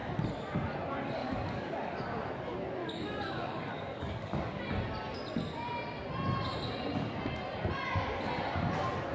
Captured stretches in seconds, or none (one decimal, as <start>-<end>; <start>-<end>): 0.0-1.2; 2.3-2.8; 4.6-9.1